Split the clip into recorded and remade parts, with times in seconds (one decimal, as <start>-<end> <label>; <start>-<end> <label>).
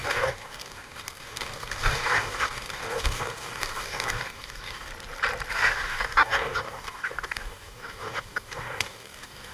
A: 0.0-4.9 remade; 4.9-5.5 recorded; 5.5-9.5 remade